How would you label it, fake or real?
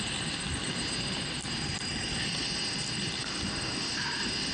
real